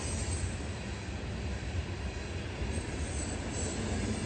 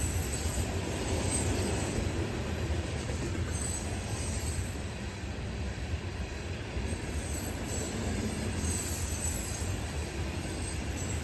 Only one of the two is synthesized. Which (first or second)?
second